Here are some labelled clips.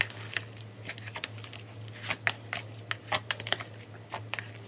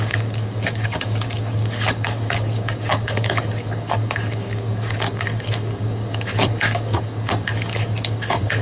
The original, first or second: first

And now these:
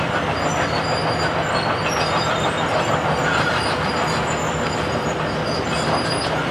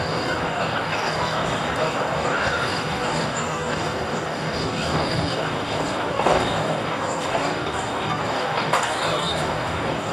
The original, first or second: first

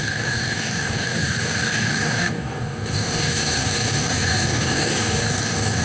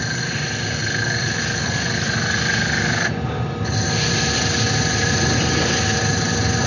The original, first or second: second